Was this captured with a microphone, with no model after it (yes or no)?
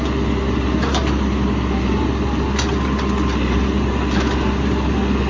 yes